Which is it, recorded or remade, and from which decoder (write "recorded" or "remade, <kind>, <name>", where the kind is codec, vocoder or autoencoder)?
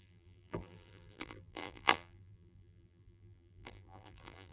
remade, vocoder, BigVGAN v2